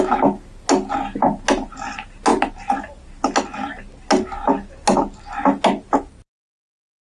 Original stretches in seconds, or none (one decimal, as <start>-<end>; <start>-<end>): 0.0-7.0